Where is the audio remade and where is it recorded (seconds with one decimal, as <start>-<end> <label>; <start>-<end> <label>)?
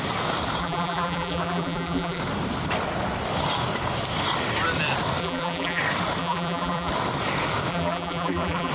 0.0-0.6 recorded; 0.6-2.2 remade; 2.2-5.2 recorded; 5.2-5.8 remade; 5.8-6.2 recorded; 6.2-6.9 remade; 6.9-7.7 recorded; 7.7-8.7 remade